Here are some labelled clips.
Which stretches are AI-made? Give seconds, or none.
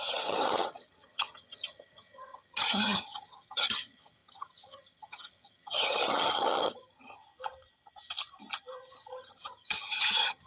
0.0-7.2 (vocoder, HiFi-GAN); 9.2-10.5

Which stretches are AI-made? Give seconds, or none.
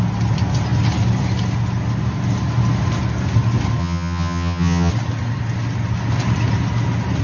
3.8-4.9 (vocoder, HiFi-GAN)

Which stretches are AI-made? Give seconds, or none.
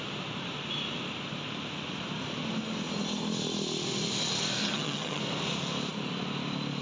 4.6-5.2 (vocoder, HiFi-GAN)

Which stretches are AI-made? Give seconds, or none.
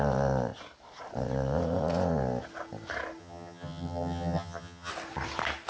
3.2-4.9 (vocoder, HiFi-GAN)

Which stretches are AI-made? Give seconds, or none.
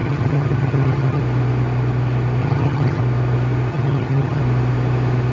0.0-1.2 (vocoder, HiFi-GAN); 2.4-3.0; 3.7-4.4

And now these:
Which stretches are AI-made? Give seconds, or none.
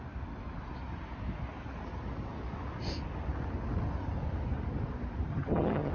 5.3-5.9 (vocoder, HiFi-GAN)